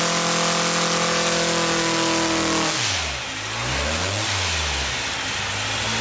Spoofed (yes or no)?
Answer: no